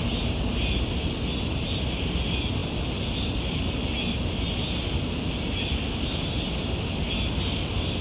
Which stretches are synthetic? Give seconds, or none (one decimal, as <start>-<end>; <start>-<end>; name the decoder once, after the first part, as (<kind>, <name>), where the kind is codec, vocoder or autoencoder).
none